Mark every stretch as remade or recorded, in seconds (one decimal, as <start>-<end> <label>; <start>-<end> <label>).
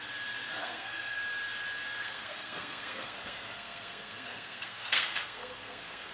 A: 0.0-0.6 recorded; 0.6-1.2 remade; 1.2-2.0 recorded; 2.0-6.1 remade